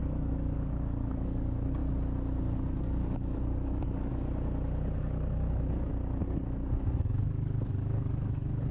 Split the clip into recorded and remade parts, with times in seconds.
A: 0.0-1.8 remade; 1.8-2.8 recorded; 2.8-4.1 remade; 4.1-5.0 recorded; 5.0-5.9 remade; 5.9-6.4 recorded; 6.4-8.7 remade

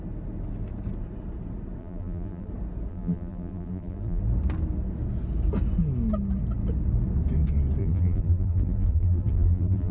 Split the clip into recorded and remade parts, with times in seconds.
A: 0.0-1.8 recorded; 1.8-2.5 remade; 2.5-2.9 recorded; 2.9-4.2 remade; 4.2-7.8 recorded; 7.8-9.9 remade